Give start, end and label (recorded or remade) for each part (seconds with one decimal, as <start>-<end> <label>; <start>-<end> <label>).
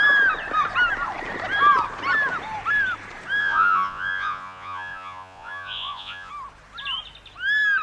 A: 0.0-3.4 recorded; 3.4-6.3 remade; 6.3-7.8 recorded